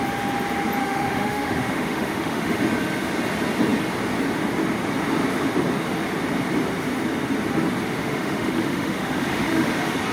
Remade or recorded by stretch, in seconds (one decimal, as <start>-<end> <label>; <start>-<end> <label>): 0.0-0.8 recorded; 0.8-2.6 remade; 2.6-8.0 recorded; 8.0-9.7 remade; 9.7-10.1 recorded